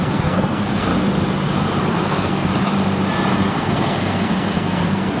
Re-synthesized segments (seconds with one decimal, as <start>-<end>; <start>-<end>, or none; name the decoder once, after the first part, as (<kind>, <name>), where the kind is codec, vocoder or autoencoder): 0.0-0.9 (codec, SNAC); 2.0-2.5; 3.5-5.2